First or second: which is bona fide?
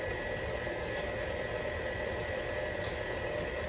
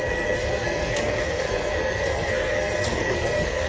first